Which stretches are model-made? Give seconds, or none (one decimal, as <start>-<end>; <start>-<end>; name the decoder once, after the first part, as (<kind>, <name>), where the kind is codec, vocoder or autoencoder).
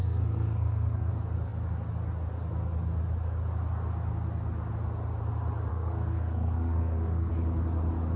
0.0-1.1 (codec, SNAC); 5.7-7.3